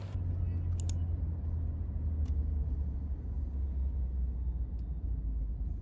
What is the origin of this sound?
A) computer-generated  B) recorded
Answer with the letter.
B